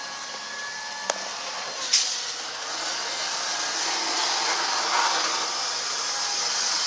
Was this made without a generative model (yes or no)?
yes